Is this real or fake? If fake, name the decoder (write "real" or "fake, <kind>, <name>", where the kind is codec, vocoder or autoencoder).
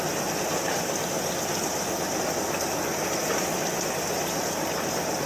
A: real